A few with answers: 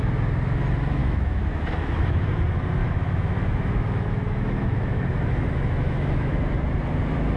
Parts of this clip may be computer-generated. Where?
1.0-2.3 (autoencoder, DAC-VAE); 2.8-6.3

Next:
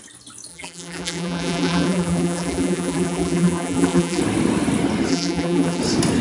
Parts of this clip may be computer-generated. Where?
0.5-4.2 (vocoder, BigVGAN v2); 5.1-5.8

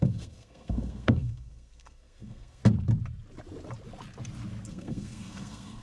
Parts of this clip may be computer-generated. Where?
0.0-2.6 (codec, SNAC); 4.7-5.8

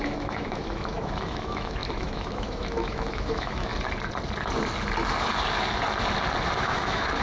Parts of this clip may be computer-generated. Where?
0.0-3.7 (autoencoder, DAC-VAE); 6.6-7.2

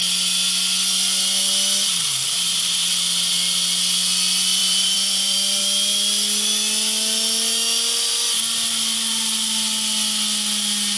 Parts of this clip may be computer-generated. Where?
4.6-5.6 (vocoder, BigVGAN v2)

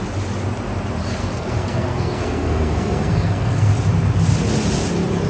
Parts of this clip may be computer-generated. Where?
1.2-3.7 (codec, SNAC)